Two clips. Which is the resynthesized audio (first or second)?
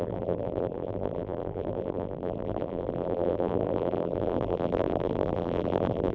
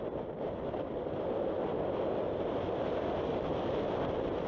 first